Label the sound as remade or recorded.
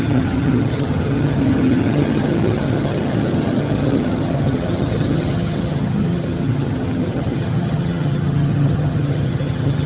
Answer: remade